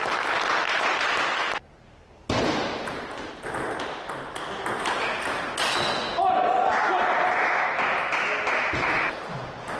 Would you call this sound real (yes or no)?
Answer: yes